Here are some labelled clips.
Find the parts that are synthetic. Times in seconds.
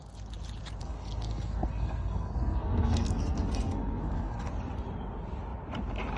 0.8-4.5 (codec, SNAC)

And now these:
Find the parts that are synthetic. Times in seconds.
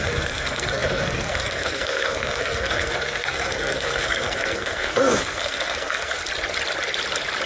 0.0-6.2 (codec, SNAC)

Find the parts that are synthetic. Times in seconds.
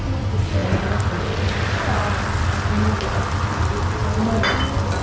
none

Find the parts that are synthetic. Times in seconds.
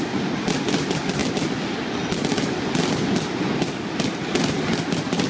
none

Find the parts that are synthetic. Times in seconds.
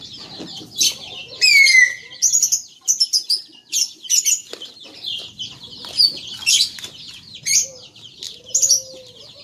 none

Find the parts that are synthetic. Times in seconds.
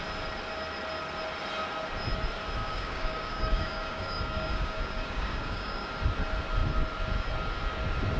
2.6-5.9 (codec, DAC)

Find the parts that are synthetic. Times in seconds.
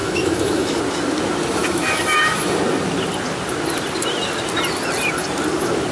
0.0-0.8 (autoencoder, DAC-VAE); 1.6-2.4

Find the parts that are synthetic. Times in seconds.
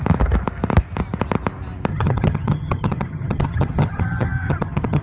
1.9-5.0 (vocoder, HiFi-GAN)